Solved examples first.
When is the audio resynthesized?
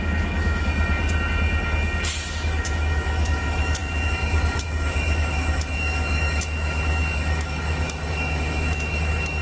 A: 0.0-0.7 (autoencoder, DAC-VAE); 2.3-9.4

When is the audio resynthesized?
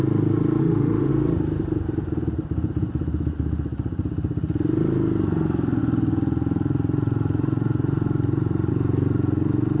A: 0.6-1.1 (autoencoder, DAC-VAE)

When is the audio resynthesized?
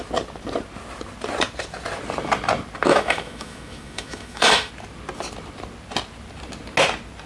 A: 2.9-4.7 (autoencoder, DAC-VAE)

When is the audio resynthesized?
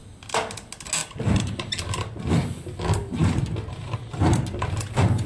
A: none